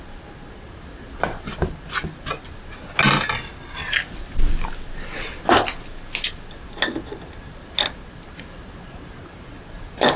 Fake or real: real